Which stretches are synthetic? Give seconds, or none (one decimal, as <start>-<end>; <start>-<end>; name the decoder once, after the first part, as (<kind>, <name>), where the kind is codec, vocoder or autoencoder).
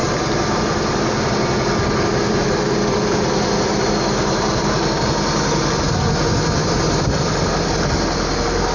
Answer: none